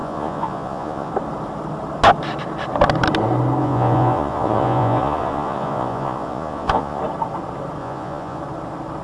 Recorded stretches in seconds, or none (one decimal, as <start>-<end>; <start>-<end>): 1.1-3.6; 7.0-7.8; 8.4-9.0